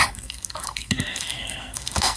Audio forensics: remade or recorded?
remade